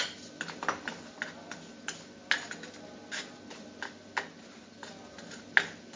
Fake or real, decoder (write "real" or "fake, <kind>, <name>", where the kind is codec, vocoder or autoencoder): real